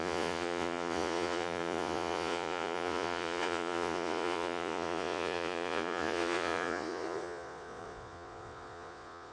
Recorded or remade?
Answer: remade